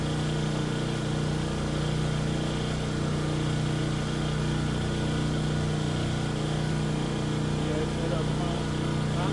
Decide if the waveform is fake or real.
real